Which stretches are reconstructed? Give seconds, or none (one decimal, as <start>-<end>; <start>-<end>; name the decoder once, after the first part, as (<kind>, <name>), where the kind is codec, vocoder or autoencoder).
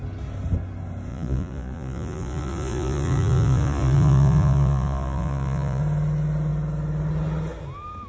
1.1-5.8 (vocoder, Vocos)